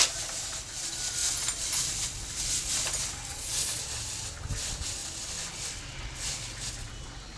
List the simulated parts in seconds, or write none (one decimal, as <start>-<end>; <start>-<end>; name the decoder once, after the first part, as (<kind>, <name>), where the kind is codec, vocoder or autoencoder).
3.3-3.8 (vocoder, Vocos)